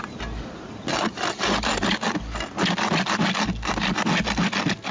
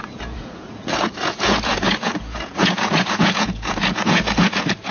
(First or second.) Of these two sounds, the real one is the first